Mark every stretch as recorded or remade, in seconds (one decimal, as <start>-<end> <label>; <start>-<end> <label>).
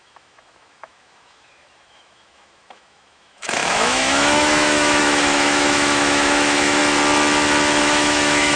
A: 0.0-6.8 remade; 6.8-7.8 recorded; 7.8-8.6 remade